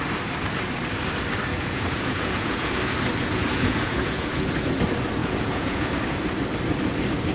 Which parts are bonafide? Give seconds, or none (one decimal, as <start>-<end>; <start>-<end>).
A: 0.0-1.5; 2.7-3.2; 4.8-5.2; 5.9-7.3

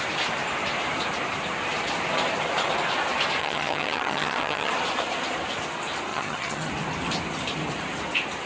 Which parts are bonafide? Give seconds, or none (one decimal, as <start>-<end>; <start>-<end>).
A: 0.0-3.4; 4.7-6.1; 6.7-8.5

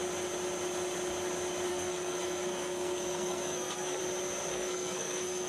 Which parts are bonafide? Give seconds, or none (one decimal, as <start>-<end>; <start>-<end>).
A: 0.0-1.7; 4.0-4.5

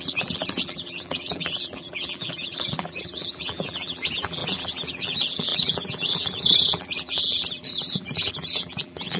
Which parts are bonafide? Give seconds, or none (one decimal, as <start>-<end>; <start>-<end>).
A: none

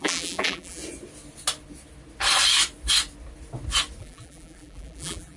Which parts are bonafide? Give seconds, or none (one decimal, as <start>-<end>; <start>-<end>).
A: 0.8-4.0

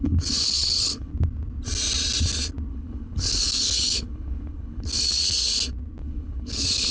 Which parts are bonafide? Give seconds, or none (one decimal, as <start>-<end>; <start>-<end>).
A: 1.1-2.7; 5.5-6.0

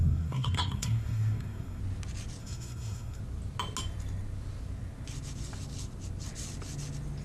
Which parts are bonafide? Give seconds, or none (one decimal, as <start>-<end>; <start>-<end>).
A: 1.8-2.4; 3.2-7.2

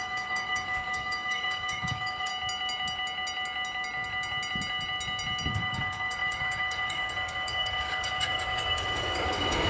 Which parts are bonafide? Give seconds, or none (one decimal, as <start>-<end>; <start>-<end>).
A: 2.3-5.5